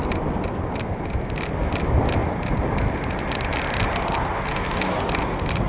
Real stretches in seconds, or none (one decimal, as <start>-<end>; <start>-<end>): 0.0-5.7